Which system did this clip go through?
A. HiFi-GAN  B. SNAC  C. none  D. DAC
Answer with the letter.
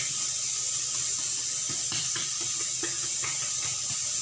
C